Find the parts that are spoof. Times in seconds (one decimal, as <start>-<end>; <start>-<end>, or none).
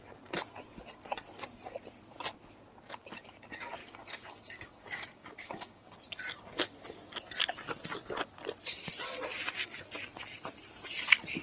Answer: 3.8-6.0